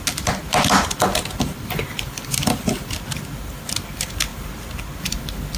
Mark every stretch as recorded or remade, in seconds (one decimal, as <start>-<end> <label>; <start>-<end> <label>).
0.0-5.6 recorded